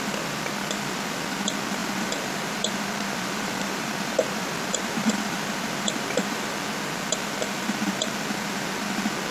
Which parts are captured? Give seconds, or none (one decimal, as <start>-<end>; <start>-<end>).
0.0-1.8; 6.6-9.3